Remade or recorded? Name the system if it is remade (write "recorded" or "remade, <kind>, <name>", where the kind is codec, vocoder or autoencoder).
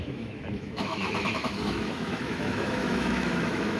remade, autoencoder, DAC-VAE